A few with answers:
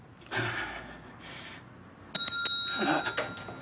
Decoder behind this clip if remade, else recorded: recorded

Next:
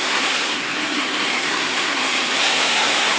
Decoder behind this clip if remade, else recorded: remade, codec, SNAC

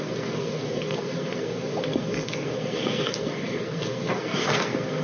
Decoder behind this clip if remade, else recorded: remade, codec, SNAC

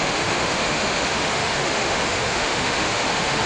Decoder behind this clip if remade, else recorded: remade, autoencoder, DAC-VAE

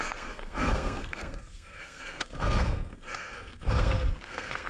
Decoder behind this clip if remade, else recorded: remade, codec, SNAC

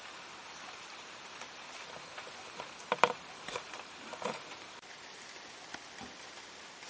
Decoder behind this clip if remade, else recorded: recorded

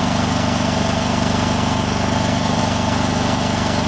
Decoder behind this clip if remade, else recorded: remade, codec, SNAC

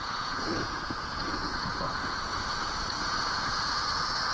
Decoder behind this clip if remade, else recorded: remade, vocoder, Vocos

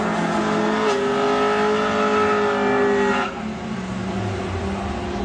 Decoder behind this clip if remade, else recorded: recorded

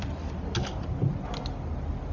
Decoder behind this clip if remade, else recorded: recorded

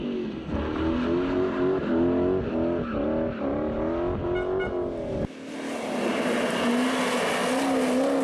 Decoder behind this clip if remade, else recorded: recorded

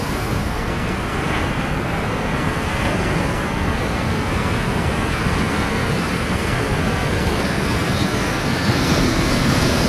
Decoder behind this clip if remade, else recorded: remade, codec, SNAC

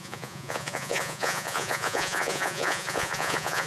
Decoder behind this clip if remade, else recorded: remade, vocoder, Vocos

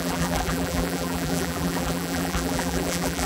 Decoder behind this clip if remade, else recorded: remade, vocoder, BigVGAN v2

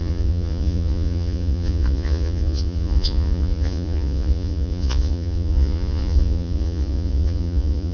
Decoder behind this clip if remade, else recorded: remade, vocoder, Vocos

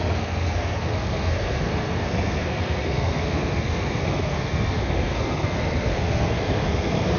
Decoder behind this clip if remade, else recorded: remade, codec, SNAC